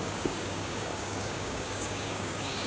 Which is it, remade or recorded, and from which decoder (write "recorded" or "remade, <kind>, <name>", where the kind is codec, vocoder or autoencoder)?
remade, codec, DAC